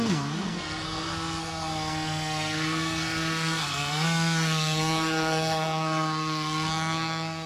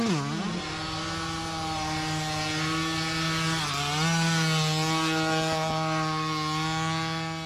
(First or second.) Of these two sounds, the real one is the second